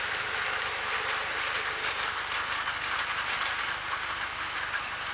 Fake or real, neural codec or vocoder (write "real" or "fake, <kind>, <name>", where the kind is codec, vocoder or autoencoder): real